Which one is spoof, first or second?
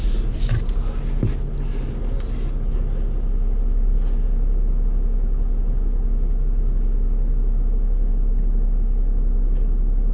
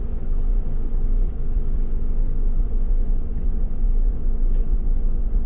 second